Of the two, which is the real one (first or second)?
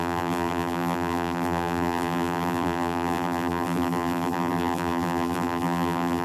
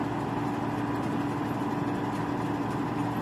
second